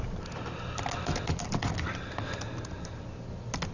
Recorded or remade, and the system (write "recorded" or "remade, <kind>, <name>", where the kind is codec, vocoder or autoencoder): recorded